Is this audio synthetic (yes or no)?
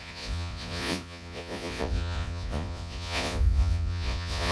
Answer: yes